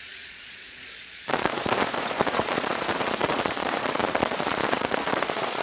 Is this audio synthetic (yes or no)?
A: yes